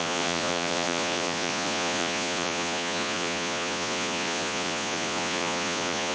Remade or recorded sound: remade